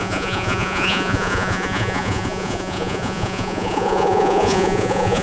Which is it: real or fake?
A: fake